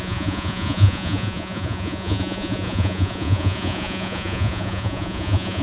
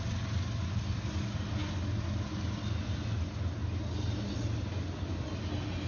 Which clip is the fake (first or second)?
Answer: first